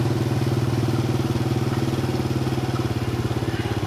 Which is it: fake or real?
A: real